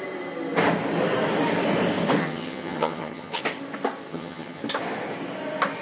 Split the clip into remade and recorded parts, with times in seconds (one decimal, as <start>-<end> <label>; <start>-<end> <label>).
0.0-2.2 recorded; 2.2-3.4 remade; 3.4-4.1 recorded; 4.1-4.6 remade; 4.6-5.8 recorded

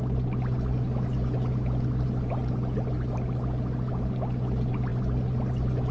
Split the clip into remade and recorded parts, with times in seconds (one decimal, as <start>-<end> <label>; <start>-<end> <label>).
0.0-5.9 recorded

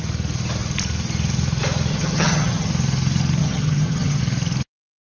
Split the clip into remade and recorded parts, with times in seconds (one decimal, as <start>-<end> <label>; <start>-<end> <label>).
0.0-1.9 recorded; 1.9-2.7 remade; 2.7-3.4 recorded; 3.4-4.2 remade; 4.2-5.2 recorded

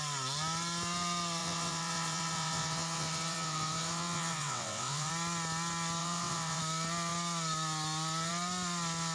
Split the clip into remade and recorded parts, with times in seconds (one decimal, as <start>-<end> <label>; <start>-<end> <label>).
0.0-1.4 recorded; 1.4-5.1 remade; 5.1-6.0 recorded; 6.0-6.6 remade; 6.6-9.1 recorded

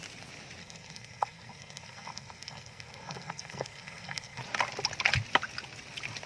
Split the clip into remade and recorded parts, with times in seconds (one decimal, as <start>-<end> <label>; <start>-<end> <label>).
0.0-0.6 recorded; 0.6-4.4 remade; 4.4-6.3 recorded

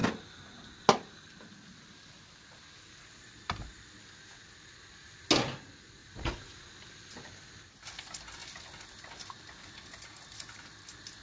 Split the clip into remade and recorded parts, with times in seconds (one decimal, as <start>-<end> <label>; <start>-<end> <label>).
0.0-6.0 recorded; 6.0-6.7 remade; 6.7-11.2 recorded